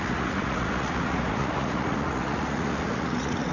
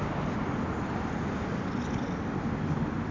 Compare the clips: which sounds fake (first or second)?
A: first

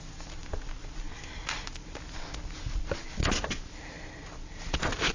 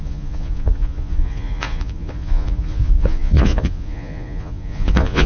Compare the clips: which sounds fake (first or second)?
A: second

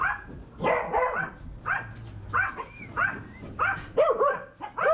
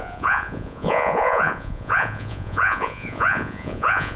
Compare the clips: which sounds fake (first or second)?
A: second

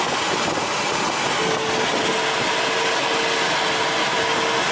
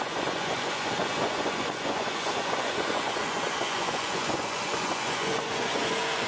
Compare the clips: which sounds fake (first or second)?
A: second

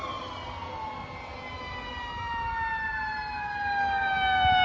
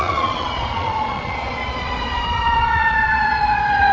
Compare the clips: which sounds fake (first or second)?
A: second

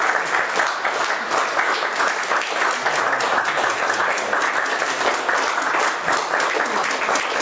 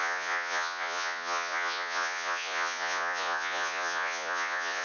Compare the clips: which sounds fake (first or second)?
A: second